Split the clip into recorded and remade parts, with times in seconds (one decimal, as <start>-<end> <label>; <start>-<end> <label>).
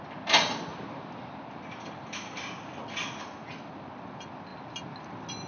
0.0-5.5 recorded